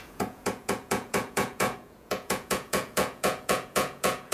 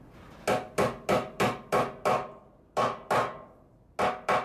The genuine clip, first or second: second